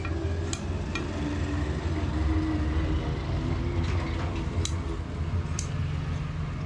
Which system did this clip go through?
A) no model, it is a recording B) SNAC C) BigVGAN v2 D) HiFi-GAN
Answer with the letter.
A